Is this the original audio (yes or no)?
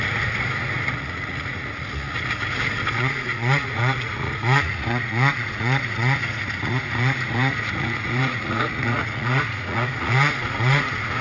no